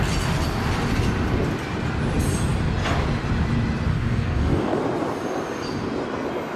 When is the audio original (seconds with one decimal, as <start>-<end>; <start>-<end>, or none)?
0.0-3.9; 4.8-6.6